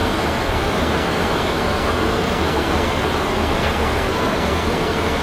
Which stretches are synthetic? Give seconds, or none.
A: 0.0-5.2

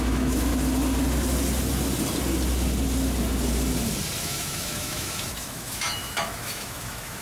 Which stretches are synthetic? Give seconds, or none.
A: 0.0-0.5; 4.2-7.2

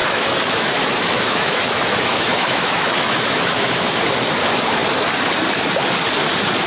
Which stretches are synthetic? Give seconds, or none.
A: 0.0-4.0